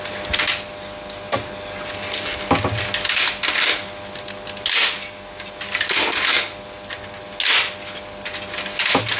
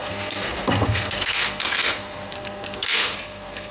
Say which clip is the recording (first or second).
first